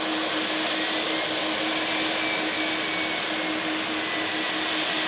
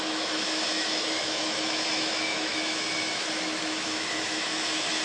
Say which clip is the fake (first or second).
second